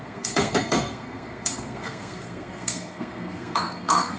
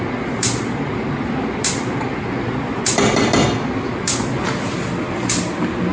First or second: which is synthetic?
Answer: first